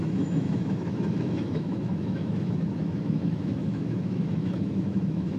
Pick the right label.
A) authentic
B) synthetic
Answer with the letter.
B